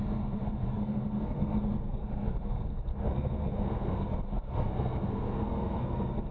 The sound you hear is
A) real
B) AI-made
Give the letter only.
B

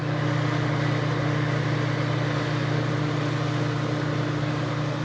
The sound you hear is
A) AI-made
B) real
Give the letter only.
B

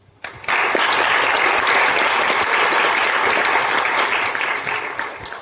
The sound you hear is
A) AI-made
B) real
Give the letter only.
B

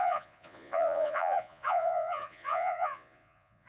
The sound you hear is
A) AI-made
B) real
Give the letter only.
A